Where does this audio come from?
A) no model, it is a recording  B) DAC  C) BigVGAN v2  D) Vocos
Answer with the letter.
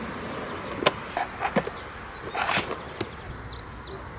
A